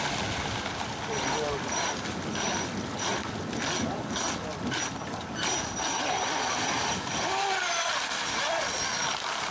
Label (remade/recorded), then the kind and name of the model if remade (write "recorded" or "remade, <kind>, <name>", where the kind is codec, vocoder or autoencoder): recorded